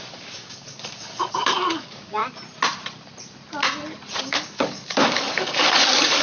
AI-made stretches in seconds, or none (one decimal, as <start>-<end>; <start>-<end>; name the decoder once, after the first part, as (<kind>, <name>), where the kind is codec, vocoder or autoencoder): 0.0-2.2 (codec, DAC); 4.2-6.2